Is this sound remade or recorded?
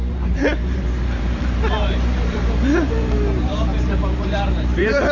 remade